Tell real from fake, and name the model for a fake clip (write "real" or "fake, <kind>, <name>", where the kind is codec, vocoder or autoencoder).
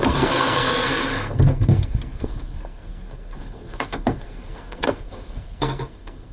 fake, codec, SNAC